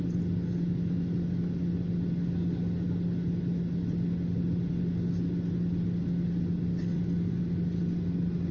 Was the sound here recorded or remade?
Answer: recorded